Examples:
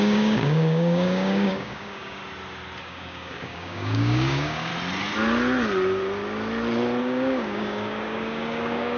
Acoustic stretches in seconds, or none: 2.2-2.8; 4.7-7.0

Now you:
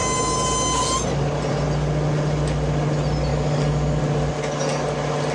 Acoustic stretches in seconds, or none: 0.0-3.3; 4.0-5.3

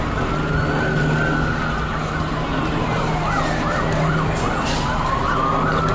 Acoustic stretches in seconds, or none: 0.0-5.9

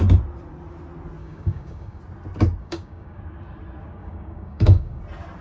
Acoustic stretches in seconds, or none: 0.0-1.2; 2.0-2.6; 3.2-4.0; 5.0-5.4

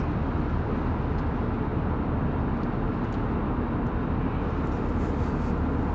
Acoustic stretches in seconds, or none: 0.0-5.9

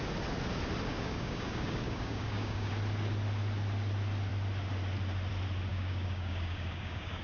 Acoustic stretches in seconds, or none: 0.0-0.9; 2.7-5.7